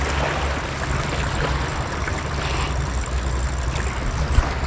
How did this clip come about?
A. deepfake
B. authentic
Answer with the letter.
B